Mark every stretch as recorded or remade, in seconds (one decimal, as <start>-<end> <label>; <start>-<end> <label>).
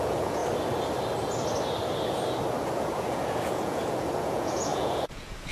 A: 0.0-0.4 remade; 0.4-2.7 recorded; 2.7-5.5 remade